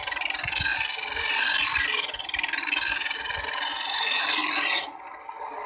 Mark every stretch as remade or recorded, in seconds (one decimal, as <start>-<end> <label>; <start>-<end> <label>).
0.0-5.7 recorded